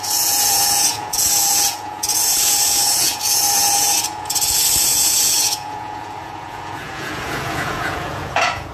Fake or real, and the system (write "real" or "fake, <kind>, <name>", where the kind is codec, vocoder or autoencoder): fake, vocoder, Vocos